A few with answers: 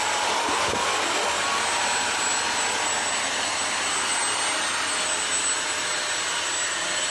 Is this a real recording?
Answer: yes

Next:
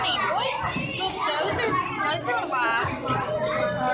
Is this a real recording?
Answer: yes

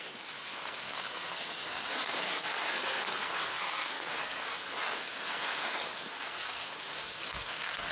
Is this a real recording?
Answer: no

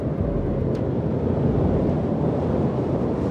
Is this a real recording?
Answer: yes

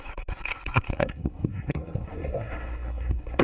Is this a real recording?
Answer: no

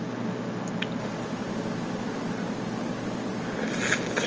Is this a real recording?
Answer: yes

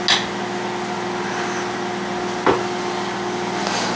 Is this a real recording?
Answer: yes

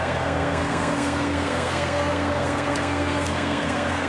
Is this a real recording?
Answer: no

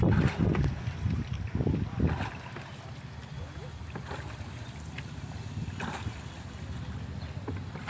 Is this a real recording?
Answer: yes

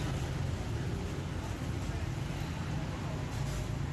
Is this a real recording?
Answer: yes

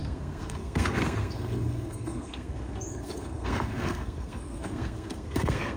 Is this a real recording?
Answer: no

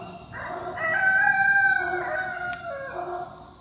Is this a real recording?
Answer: yes